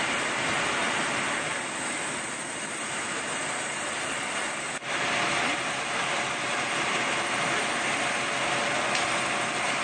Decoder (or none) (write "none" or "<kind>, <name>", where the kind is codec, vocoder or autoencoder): none